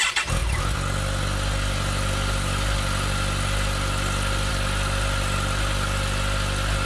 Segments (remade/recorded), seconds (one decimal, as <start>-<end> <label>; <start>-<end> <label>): 0.0-6.9 recorded

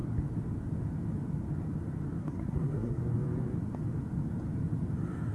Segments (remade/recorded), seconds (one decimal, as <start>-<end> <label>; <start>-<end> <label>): 0.0-2.2 recorded; 2.2-3.0 remade; 3.0-5.3 recorded

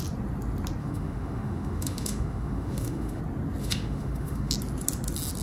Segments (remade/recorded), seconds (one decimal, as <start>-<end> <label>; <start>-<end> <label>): 0.0-0.8 recorded; 0.8-3.2 remade; 3.2-3.6 recorded; 3.6-4.5 remade; 4.5-5.4 recorded

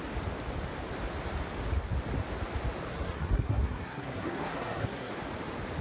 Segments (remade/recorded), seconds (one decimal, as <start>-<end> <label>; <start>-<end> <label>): 0.0-2.9 recorded; 2.9-5.1 remade; 5.1-5.8 recorded

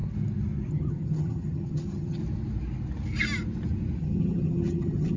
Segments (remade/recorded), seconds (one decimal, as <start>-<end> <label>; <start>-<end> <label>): 0.0-0.7 recorded; 0.7-2.2 remade; 2.2-4.0 recorded; 4.0-5.2 remade

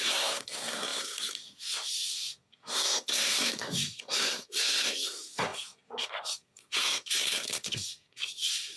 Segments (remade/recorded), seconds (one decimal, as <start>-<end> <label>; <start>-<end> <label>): 0.0-8.8 remade

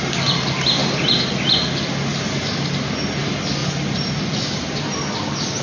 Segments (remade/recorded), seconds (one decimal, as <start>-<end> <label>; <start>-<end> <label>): 0.0-5.6 recorded